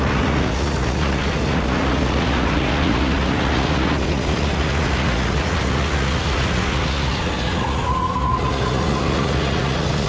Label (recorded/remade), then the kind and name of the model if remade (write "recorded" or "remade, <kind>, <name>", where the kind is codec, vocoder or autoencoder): remade, vocoder, Vocos